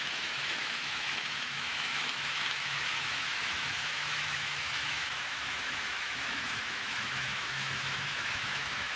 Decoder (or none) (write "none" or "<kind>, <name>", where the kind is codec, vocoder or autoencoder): autoencoder, DAC-VAE